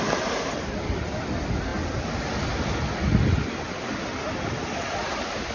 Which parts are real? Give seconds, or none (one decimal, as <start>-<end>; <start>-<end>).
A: 0.0-5.5